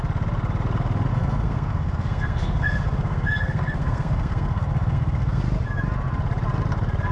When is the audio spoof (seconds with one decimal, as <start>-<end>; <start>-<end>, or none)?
1.1-5.4